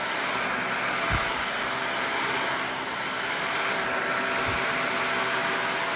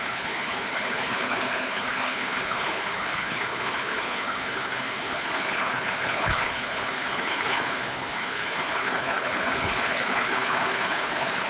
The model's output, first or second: second